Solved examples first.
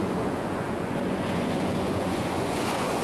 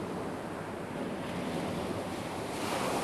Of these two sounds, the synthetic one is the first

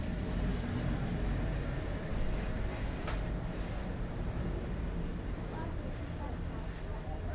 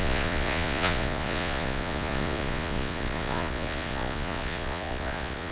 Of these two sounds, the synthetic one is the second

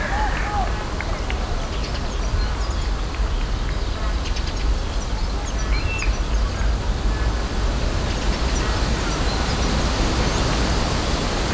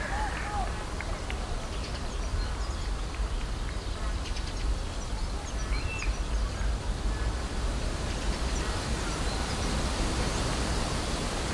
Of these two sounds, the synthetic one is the second